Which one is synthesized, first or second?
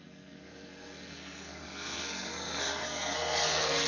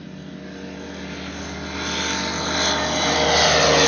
first